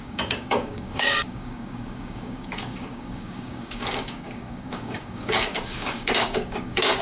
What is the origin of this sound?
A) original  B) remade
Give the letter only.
B